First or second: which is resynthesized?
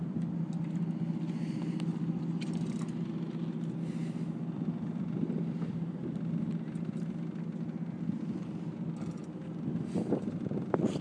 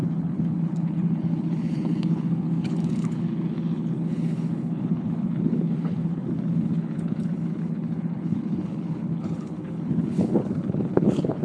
second